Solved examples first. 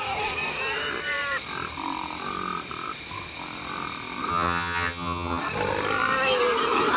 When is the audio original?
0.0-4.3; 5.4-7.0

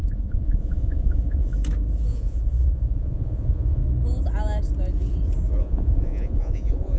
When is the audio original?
1.5-2.1; 3.8-5.6